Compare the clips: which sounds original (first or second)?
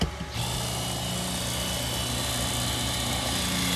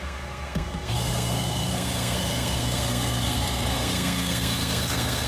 first